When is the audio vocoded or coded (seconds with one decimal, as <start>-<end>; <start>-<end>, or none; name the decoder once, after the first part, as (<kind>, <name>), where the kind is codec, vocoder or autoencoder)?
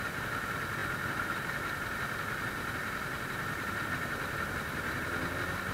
none